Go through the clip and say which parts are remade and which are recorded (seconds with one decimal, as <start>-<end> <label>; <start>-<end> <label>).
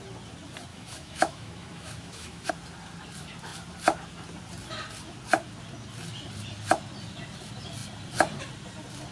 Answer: 0.0-0.7 recorded; 0.7-2.5 remade; 2.5-9.1 recorded